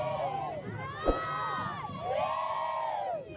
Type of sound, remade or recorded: recorded